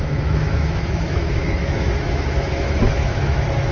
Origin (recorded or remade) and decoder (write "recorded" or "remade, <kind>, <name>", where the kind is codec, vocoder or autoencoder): remade, autoencoder, DAC-VAE